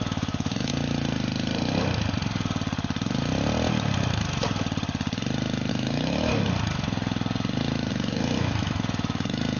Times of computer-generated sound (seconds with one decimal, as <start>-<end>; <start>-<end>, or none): 0.0-0.7; 5.7-6.3; 7.9-9.6